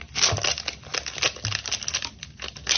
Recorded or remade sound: recorded